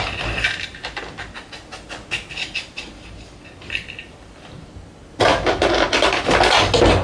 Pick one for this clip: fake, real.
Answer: real